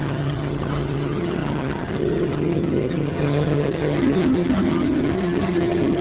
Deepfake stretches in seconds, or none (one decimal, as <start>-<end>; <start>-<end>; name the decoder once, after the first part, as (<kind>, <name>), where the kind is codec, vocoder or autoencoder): 0.0-6.0 (vocoder, HiFi-GAN)